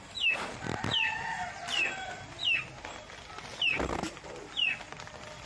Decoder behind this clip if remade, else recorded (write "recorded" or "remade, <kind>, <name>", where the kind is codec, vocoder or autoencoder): recorded